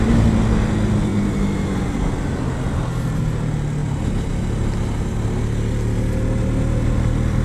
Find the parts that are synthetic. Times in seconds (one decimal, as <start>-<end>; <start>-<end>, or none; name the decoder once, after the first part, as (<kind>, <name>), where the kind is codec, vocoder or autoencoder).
none